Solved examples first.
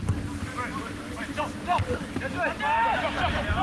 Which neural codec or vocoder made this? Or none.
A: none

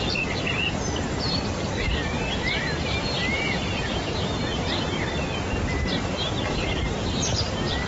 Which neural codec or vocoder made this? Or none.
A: none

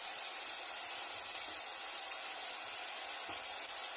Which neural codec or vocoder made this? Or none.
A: none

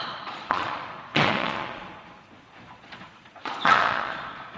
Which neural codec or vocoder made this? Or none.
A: vocoder, Vocos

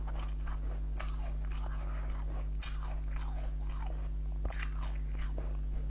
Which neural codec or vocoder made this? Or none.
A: none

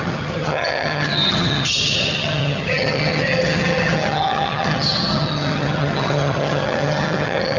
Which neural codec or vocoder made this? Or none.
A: vocoder, HiFi-GAN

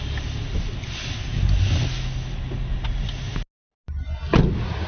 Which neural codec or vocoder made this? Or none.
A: none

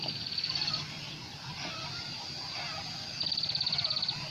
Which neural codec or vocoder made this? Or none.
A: none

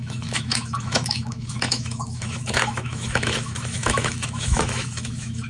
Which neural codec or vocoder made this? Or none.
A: autoencoder, DAC-VAE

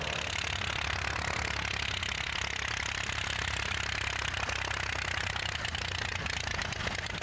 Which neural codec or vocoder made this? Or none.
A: vocoder, BigVGAN v2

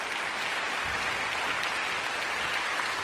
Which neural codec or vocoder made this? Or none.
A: none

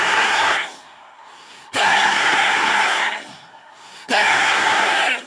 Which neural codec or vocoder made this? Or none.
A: codec, SNAC